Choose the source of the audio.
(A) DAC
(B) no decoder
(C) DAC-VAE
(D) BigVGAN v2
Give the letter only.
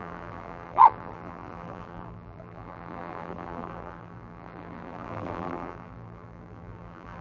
D